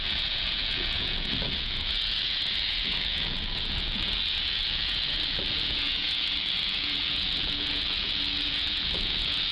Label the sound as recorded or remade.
remade